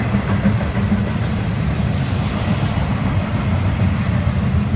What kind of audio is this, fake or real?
real